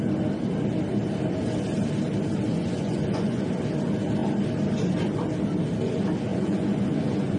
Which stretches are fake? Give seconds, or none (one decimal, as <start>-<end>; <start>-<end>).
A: 2.5-3.4; 6.3-7.4